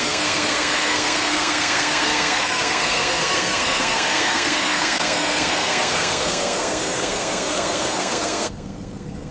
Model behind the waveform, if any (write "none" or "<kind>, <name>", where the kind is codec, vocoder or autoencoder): codec, SNAC